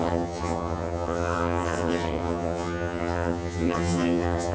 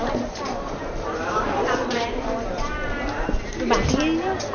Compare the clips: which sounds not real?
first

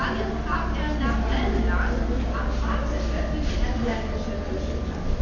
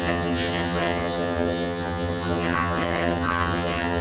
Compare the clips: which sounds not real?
second